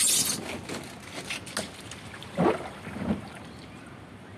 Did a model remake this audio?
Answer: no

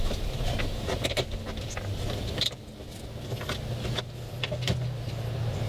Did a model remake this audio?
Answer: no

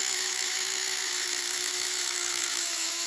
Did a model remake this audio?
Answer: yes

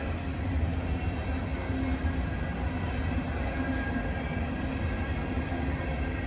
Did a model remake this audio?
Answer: no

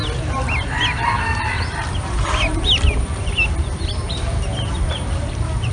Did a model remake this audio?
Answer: no